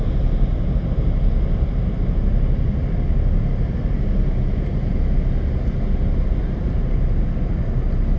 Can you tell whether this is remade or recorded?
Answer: recorded